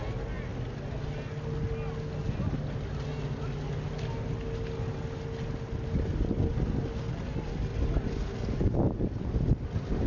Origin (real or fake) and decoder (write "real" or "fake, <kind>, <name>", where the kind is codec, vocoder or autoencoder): real